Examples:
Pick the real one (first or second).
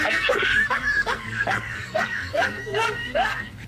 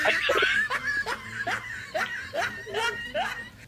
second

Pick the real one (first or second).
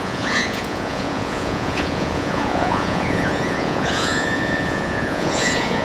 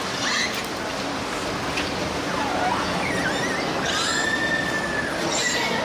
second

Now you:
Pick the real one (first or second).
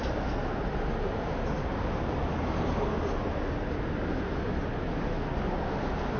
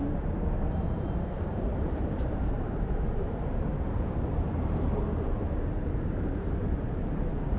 first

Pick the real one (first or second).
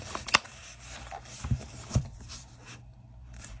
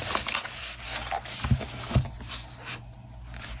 second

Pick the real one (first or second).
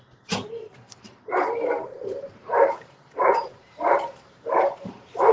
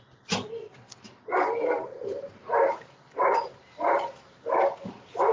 second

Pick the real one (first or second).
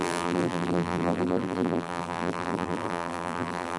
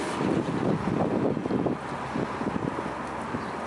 second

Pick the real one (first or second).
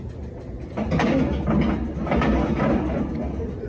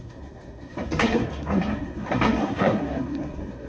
first